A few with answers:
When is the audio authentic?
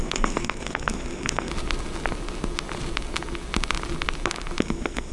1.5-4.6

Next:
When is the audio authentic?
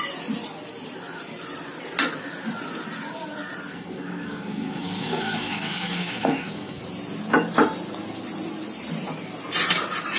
0.0-3.7; 6.8-10.2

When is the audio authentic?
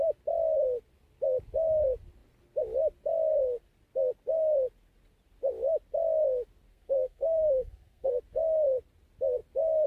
0.0-6.7; 8.1-9.9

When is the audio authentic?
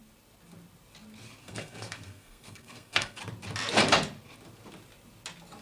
0.0-1.4; 3.2-5.6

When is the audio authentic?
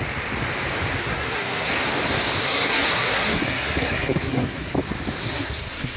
0.0-1.0; 1.7-2.4; 4.7-5.2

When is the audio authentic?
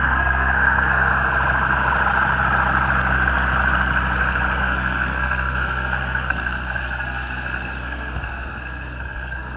1.1-4.6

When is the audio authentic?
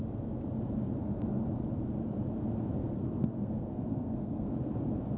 0.0-2.8; 4.5-5.2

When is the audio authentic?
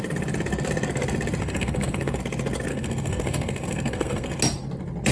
0.0-1.4; 2.2-2.7; 4.4-5.1